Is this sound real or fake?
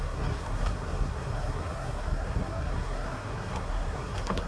fake